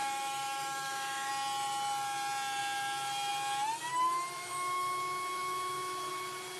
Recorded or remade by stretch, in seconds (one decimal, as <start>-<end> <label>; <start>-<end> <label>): 0.0-1.3 remade; 1.3-3.9 recorded; 3.9-6.1 remade; 6.1-6.6 recorded